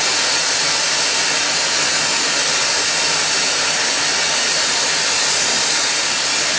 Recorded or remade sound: recorded